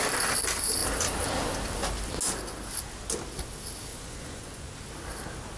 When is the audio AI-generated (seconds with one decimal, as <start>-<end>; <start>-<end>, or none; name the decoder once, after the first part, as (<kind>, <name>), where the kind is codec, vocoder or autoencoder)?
3.9-4.7 (vocoder, Vocos)